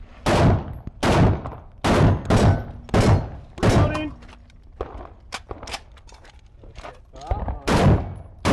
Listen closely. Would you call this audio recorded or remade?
recorded